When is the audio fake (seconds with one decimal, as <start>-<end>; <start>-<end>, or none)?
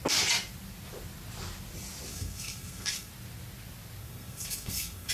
2.1-3.1; 4.0-5.1